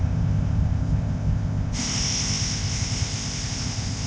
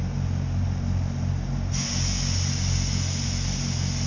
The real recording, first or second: second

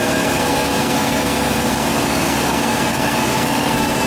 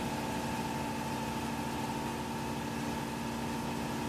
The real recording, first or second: second